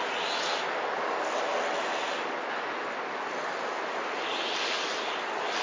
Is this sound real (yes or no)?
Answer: yes